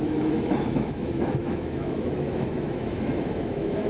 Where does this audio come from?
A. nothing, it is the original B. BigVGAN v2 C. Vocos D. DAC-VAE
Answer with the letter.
D